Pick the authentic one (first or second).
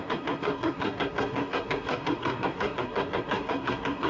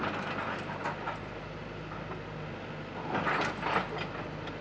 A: second